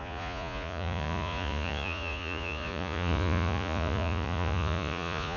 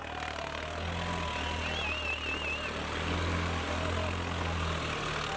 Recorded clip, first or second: second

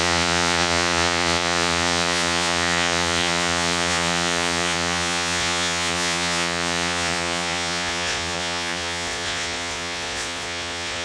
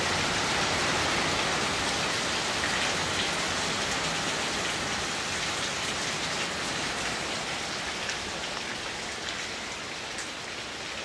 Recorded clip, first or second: second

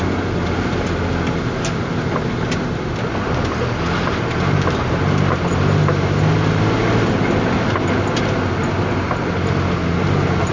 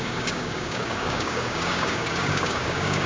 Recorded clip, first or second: first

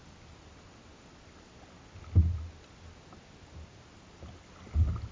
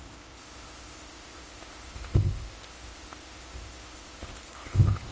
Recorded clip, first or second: first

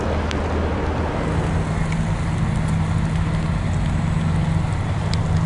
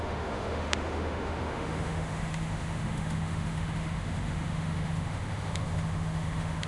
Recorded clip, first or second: first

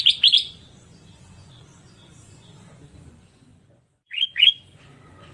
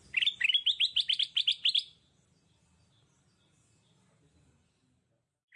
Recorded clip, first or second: second